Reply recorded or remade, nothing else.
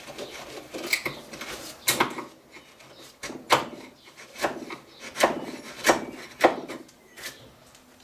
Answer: recorded